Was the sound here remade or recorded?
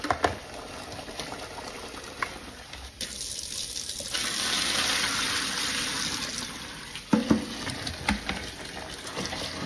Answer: recorded